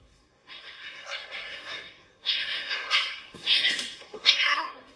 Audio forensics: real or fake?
fake